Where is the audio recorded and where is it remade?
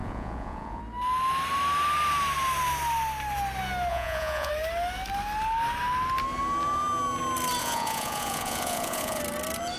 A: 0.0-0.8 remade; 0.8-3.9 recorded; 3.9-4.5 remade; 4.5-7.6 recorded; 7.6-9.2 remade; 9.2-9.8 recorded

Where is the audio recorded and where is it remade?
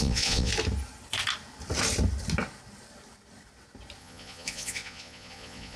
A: 0.0-0.5 remade; 0.5-4.0 recorded; 4.0-5.8 remade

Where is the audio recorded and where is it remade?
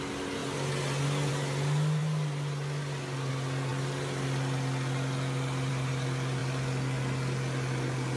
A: 0.0-8.2 recorded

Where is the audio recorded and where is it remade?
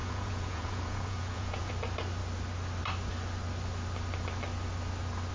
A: 0.0-1.7 remade; 1.7-5.3 recorded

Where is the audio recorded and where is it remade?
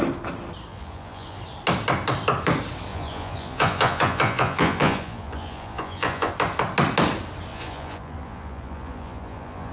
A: 0.0-0.7 recorded; 0.7-1.4 remade; 1.4-2.9 recorded; 2.9-6.3 remade; 6.3-7.5 recorded; 7.5-9.7 remade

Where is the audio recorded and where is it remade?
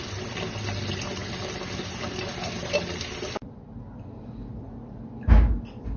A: 0.0-6.0 recorded